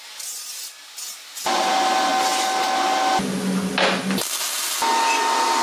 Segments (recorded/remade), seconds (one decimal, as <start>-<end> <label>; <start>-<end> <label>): 0.0-1.2 recorded; 1.2-1.7 remade; 1.7-5.6 recorded